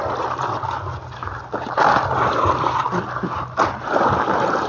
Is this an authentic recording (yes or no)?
yes